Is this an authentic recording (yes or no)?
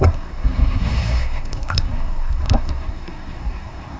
no